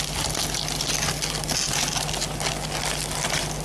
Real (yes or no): yes